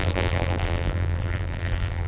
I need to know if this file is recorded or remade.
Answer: remade